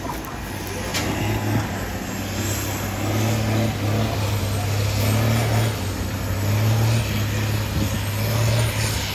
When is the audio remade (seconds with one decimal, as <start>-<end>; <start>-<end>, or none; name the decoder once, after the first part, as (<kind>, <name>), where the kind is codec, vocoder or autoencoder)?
none